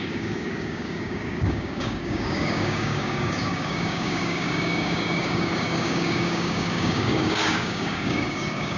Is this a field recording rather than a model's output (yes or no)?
no